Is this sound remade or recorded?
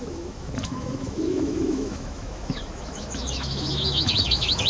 remade